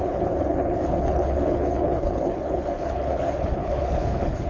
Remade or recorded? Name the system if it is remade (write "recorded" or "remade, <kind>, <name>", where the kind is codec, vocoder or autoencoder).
remade, codec, HILCodec